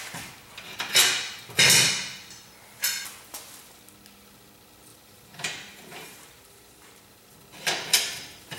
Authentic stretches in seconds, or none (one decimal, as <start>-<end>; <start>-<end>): 0.0-4.9; 7.3-8.6